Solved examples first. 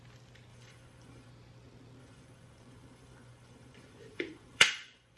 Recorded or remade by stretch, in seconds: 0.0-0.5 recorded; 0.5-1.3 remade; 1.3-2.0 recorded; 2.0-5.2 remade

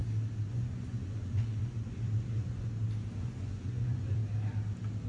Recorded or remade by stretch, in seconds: 0.0-0.5 recorded; 0.5-2.7 remade; 2.7-3.2 recorded; 3.2-4.2 remade; 4.2-5.1 recorded

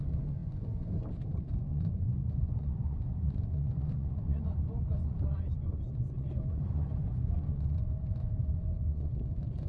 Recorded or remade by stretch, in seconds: 0.0-9.7 remade

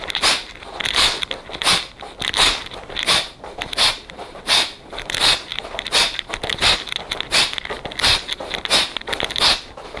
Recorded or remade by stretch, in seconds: 0.0-10.0 recorded

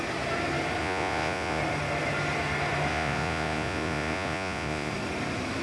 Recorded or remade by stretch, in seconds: 0.0-0.8 recorded; 0.8-1.6 remade; 1.6-2.9 recorded; 2.9-4.9 remade; 4.9-5.6 recorded

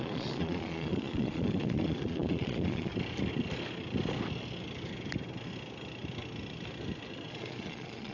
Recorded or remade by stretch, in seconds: 0.0-2.9 remade; 2.9-7.3 recorded; 7.3-8.1 remade

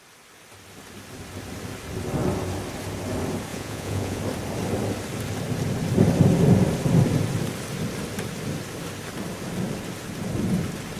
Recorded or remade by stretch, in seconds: 0.0-3.5 recorded; 3.5-4.2 remade; 4.2-11.0 recorded